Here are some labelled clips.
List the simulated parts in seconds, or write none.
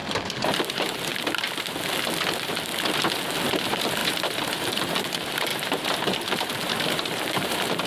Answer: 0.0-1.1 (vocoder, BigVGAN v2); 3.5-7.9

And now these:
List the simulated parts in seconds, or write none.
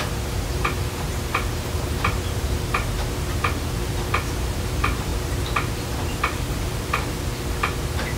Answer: 0.0-8.2 (vocoder, BigVGAN v2)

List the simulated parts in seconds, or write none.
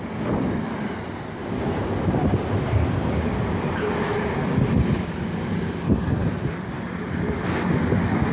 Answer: none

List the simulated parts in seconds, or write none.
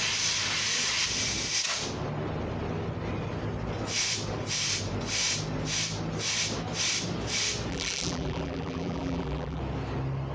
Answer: 7.7-9.6 (vocoder, BigVGAN v2)